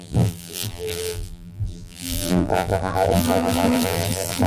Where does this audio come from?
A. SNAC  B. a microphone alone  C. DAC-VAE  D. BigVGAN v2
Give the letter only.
D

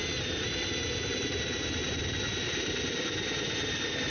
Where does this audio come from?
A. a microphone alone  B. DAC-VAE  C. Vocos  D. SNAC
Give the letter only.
A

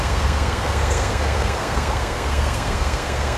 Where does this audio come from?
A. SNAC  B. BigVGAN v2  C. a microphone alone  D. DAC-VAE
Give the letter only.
A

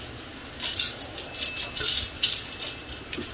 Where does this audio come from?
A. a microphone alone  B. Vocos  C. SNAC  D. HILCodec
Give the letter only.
A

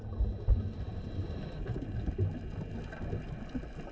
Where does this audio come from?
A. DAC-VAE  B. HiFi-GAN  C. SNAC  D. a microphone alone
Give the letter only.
D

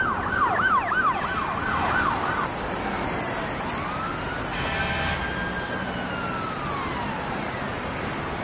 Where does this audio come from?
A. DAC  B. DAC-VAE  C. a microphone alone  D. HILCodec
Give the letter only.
C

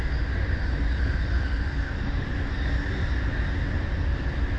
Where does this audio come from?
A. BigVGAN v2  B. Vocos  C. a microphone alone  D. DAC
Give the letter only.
C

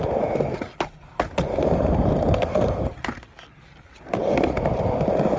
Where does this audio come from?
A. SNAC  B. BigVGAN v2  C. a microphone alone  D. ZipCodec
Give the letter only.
C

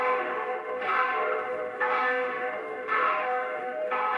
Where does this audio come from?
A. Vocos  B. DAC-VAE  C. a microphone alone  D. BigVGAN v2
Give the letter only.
B